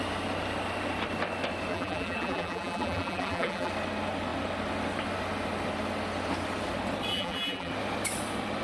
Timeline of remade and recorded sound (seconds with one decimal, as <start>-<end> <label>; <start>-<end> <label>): 0.0-1.7 recorded; 1.7-3.7 remade; 3.7-7.1 recorded; 7.1-7.7 remade; 7.7-8.6 recorded

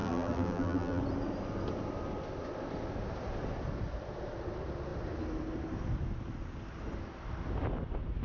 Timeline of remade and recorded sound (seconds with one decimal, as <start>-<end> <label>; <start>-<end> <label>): 0.0-1.0 remade; 1.0-8.2 recorded